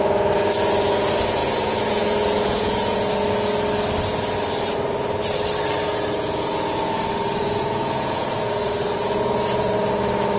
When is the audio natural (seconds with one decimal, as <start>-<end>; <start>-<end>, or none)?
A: 0.0-1.4; 3.1-5.9; 6.8-7.4; 9.9-10.4